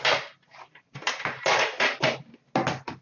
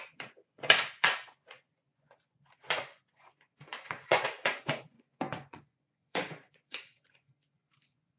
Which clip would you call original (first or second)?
first